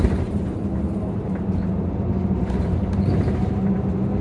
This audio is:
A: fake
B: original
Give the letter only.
A